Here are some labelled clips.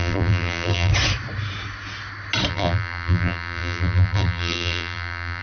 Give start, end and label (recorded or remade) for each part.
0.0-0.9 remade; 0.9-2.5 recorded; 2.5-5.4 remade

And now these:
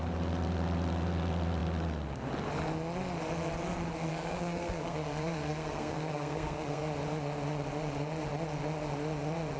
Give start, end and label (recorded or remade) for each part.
0.0-4.1 recorded; 4.1-6.8 remade; 6.8-9.6 recorded

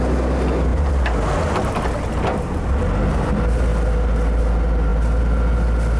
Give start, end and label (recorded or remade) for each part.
0.0-6.0 recorded